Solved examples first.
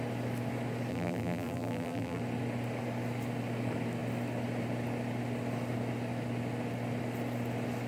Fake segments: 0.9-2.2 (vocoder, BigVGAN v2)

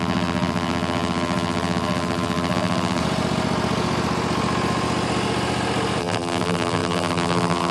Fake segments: 0.0-3.0 (vocoder, BigVGAN v2); 6.0-7.7

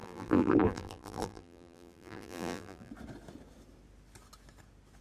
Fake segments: 0.0-2.9 (vocoder, BigVGAN v2)

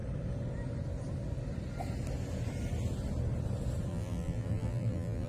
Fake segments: 3.9-5.3 (vocoder, BigVGAN v2)

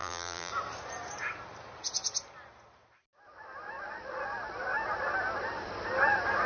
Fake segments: 0.0-0.5 (vocoder, BigVGAN v2)

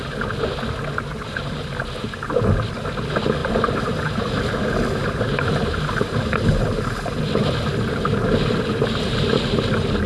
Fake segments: 1.1-1.7 (vocoder, BigVGAN v2); 3.4-7.2

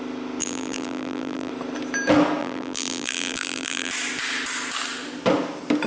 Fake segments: 0.4-1.5 (vocoder, BigVGAN v2); 2.4-3.9